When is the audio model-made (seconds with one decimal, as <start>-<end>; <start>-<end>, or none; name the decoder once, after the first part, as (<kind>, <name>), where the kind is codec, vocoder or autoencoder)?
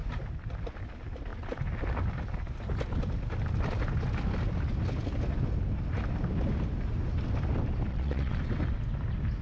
7.9-8.4 (vocoder, Vocos)